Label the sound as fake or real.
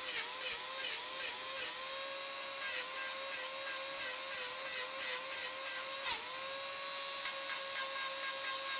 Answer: real